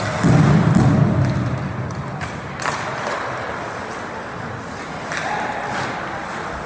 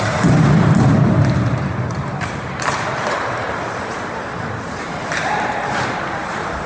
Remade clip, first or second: second